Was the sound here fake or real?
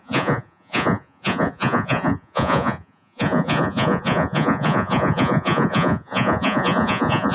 fake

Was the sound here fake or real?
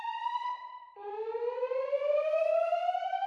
fake